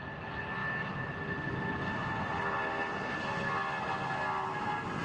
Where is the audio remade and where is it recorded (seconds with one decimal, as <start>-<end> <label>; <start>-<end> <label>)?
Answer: 0.0-5.0 recorded